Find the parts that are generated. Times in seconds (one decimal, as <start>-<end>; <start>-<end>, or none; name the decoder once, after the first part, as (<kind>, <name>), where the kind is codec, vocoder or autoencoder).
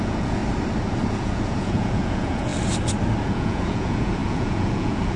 0.0-0.4 (vocoder, Vocos); 1.1-2.5; 3.2-5.2